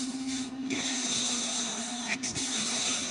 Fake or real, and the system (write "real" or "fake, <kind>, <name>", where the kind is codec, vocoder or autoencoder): fake, codec, SNAC